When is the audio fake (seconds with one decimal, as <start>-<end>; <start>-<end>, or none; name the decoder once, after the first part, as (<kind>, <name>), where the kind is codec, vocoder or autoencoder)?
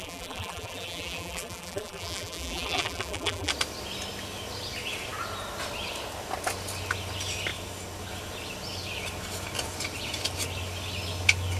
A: 0.0-3.5 (vocoder, BigVGAN v2)